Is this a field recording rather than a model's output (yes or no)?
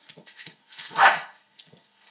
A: no